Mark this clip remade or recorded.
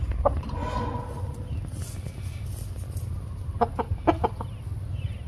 recorded